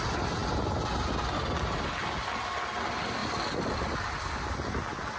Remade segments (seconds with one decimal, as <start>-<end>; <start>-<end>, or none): none